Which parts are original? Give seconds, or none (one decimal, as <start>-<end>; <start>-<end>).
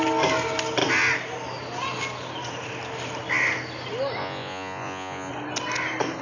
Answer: 0.0-4.2; 5.3-6.2